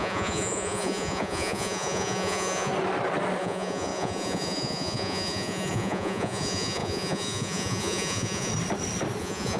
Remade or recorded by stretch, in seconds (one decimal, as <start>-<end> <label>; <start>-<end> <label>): 0.0-2.7 remade; 2.7-3.4 recorded; 3.4-8.5 remade; 8.5-9.2 recorded; 9.2-9.6 remade

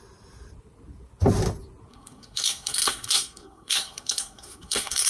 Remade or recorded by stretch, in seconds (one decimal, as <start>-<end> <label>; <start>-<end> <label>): 0.0-1.9 recorded; 1.9-5.1 remade